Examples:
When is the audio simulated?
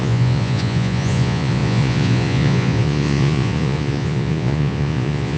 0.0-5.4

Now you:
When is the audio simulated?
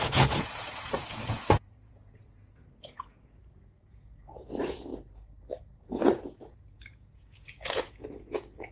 0.0-4.9; 5.6-8.7